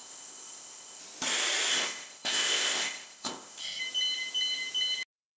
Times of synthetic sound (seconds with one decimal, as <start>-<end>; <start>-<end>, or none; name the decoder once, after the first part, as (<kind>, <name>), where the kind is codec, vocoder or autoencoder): 0.0-1.0 (codec, ZipCodec); 1.7-3.8